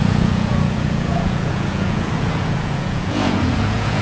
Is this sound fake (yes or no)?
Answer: yes